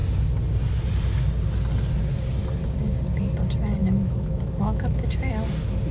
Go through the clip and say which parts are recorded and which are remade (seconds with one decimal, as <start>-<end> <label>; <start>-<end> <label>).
0.0-3.8 recorded; 3.8-5.3 remade; 5.3-5.9 recorded